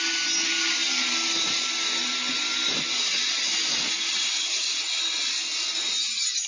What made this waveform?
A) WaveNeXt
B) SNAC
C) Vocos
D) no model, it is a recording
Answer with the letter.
D